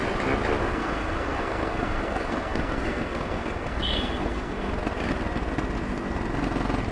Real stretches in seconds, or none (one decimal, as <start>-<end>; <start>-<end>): 0.0-0.6; 4.7-6.9